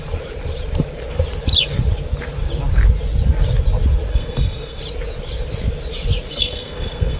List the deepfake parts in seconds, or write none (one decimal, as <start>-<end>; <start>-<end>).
4.1-4.8; 6.3-7.2